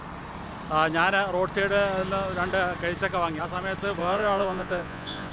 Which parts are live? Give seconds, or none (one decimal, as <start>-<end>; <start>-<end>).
0.0-4.0

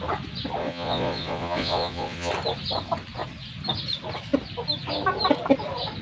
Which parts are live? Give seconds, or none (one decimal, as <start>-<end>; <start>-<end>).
0.0-0.6; 2.3-6.0

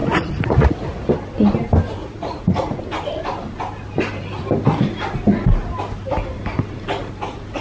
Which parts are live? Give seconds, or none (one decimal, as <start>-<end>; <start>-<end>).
1.1-2.0; 2.8-7.6

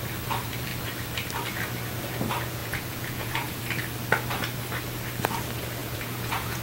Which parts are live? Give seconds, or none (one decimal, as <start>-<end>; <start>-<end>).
0.0-2.6; 3.6-5.8

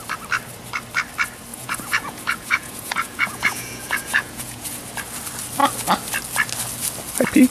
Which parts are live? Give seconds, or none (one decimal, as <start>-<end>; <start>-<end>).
0.0-1.5; 4.8-7.5

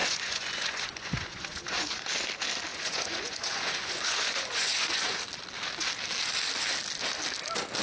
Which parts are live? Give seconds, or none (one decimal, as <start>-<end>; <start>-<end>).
2.1-2.7; 5.2-7.8

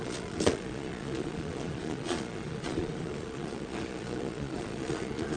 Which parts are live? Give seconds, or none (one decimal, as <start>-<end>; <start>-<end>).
none